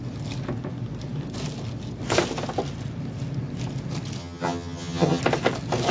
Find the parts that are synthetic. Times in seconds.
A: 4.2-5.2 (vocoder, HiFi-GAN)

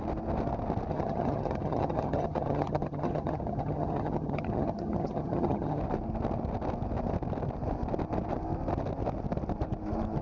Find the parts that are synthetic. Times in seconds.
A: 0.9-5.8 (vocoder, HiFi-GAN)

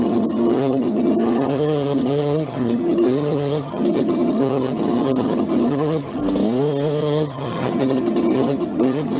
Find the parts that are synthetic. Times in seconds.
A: 0.0-6.2 (vocoder, HiFi-GAN); 7.0-9.2

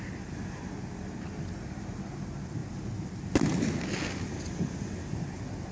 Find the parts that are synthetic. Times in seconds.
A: none